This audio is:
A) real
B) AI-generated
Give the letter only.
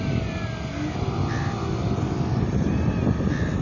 A